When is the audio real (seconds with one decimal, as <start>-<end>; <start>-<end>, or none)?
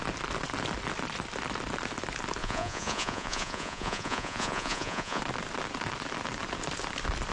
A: 0.0-2.4; 5.2-7.3